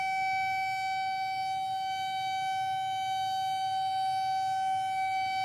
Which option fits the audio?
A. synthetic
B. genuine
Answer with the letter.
B